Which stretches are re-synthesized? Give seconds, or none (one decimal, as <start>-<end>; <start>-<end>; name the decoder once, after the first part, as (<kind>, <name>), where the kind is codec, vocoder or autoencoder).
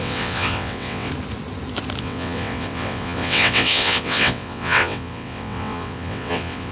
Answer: 0.0-1.1 (vocoder, WaveNeXt); 2.0-6.7